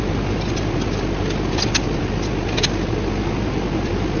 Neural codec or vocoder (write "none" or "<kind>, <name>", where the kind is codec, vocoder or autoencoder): none